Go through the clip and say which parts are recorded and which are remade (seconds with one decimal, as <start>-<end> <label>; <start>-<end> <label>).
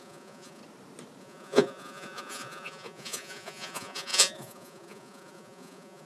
0.0-0.6 remade; 0.6-1.2 recorded; 1.2-6.1 remade